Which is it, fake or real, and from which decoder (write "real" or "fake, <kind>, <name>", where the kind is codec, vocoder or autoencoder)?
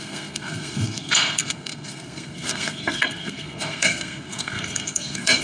fake, codec, SNAC